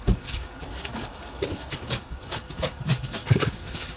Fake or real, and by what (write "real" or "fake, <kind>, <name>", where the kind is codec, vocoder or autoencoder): fake, codec, DAC